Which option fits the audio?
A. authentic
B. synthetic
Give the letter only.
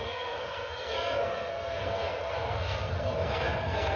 B